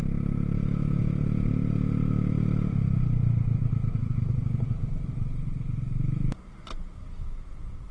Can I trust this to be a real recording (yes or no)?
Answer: yes